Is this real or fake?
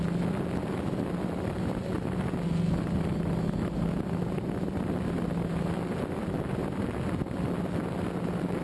real